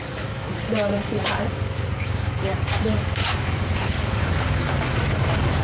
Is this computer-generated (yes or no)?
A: yes